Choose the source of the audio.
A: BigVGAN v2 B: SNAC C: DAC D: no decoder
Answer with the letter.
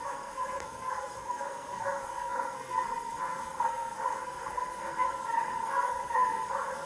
B